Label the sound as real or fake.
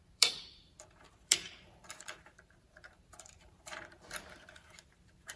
fake